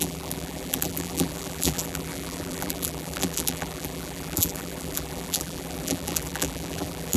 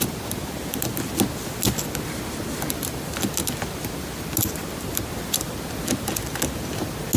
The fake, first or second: first